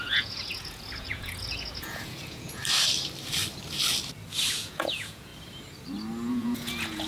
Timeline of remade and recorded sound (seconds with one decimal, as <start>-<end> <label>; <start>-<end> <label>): 0.0-2.6 remade; 2.6-4.5 recorded; 4.5-5.3 remade; 5.3-6.3 recorded; 6.3-7.1 remade